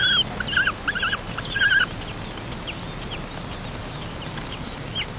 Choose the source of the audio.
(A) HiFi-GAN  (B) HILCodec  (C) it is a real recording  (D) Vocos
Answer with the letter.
C